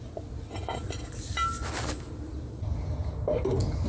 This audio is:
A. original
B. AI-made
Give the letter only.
A